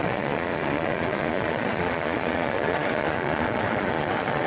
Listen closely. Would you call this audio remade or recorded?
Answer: remade